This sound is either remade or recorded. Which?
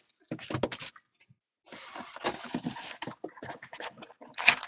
recorded